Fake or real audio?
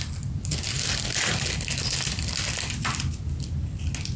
real